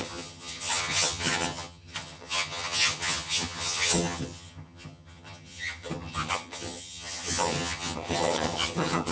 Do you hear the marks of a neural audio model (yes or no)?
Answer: yes